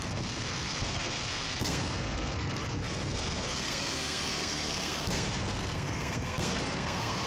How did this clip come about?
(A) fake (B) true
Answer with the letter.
A